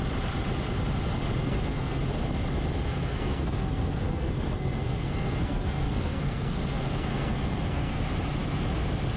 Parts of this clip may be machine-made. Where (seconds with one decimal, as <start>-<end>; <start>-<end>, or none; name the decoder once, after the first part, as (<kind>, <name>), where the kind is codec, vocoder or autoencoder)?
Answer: 1.4-2.0 (codec, SNAC); 2.9-8.0